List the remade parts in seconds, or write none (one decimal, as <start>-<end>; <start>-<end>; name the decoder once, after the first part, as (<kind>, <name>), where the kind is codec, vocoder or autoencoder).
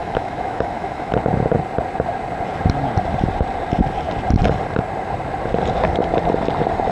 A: 0.0-1.1 (autoencoder, DAC-VAE)